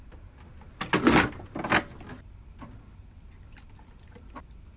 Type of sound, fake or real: real